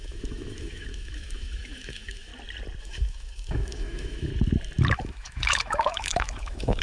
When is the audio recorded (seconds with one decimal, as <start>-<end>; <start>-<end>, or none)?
2.3-2.8; 4.3-4.9